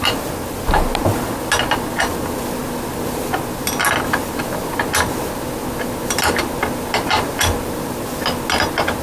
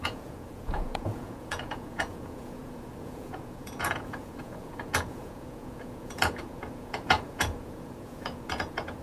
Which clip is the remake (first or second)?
second